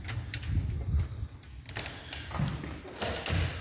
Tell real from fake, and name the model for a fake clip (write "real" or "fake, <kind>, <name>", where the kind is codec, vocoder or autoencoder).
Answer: real